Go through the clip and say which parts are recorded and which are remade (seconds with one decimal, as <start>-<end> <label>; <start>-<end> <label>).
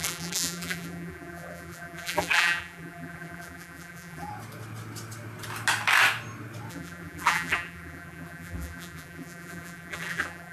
0.0-4.3 remade; 4.3-6.7 recorded; 6.7-10.5 remade